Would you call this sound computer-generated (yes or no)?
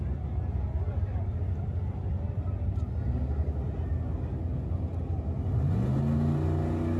no